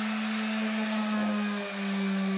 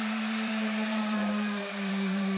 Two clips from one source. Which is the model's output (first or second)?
second